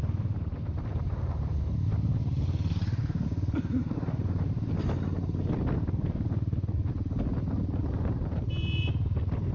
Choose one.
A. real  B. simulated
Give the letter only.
A